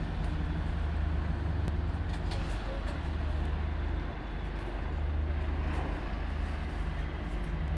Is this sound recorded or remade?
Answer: recorded